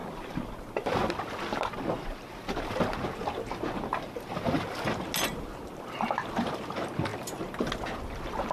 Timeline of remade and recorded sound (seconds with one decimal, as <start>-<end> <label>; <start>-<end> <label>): 0.0-3.9 recorded; 3.9-4.7 remade; 4.7-7.1 recorded; 7.1-7.7 remade; 7.7-8.5 recorded